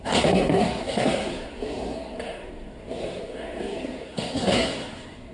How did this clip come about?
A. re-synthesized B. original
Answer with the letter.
A